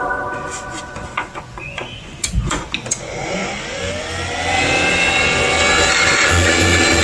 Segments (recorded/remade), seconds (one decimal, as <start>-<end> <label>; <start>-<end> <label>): 0.0-3.4 remade; 3.4-6.0 recorded; 6.0-7.0 remade